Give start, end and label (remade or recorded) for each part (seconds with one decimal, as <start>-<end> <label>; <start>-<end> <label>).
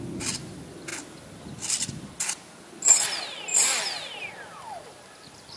0.0-5.6 recorded